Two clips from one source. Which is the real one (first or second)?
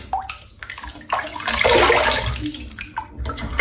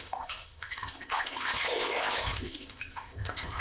first